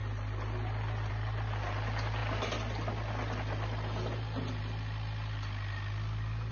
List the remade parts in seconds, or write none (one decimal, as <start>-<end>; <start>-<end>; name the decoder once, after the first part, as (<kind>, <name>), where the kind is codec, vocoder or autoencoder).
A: none